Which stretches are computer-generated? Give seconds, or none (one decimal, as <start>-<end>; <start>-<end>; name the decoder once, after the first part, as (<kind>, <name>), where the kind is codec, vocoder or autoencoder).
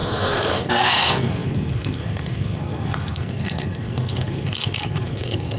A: 0.0-5.6 (codec, SNAC)